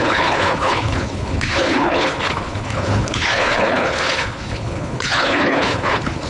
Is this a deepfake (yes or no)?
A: yes